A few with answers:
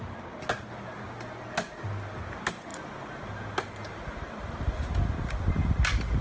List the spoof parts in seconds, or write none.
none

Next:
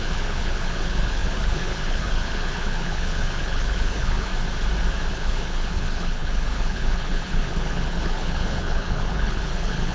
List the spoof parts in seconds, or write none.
0.0-4.3 (codec, HILCodec); 5.1-9.9

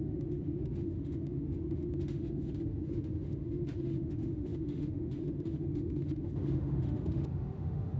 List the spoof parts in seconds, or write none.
0.0-8.0 (autoencoder, DAC-VAE)

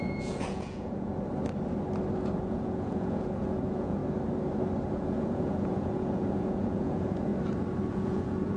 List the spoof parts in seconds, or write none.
0.0-1.1 (vocoder, Vocos); 2.4-4.0; 4.9-7.3; 7.9-8.6

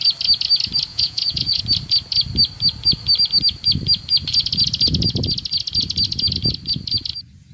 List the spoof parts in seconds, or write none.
0.9-1.6 (vocoder, Vocos)